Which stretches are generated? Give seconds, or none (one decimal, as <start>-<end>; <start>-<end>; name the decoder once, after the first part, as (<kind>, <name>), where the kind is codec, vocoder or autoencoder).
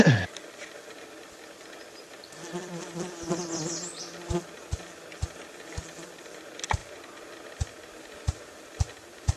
none